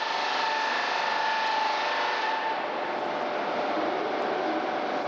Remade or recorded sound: recorded